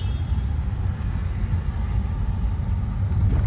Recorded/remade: recorded